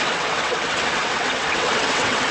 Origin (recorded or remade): remade